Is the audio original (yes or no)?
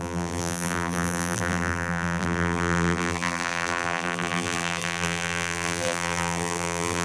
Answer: no